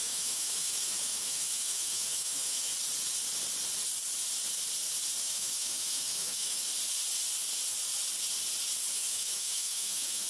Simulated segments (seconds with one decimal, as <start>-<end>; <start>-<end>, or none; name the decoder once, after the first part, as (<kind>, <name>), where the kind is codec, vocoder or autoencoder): 0.0-2.7 (autoencoder, DAC-VAE); 5.2-6.7; 8.9-10.3